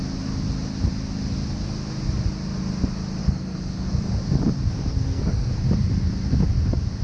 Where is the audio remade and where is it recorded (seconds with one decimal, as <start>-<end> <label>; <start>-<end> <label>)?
0.0-3.2 recorded; 3.2-4.0 remade; 4.0-4.7 recorded; 4.7-5.6 remade; 5.6-7.0 recorded